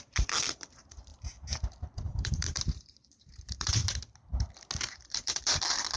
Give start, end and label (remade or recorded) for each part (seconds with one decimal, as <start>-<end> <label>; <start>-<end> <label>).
0.0-1.1 remade; 1.1-1.8 recorded; 1.8-3.8 remade; 3.8-4.8 recorded; 4.8-6.0 remade